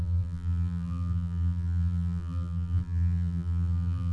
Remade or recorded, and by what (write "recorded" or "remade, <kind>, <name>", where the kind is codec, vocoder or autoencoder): remade, vocoder, BigVGAN v2